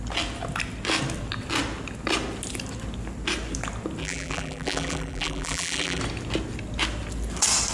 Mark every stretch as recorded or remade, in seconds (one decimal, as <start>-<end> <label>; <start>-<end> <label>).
0.0-4.0 recorded; 4.0-6.0 remade; 6.0-7.7 recorded